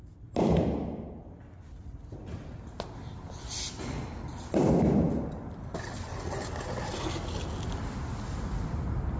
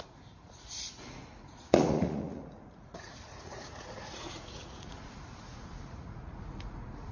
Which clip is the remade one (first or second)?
second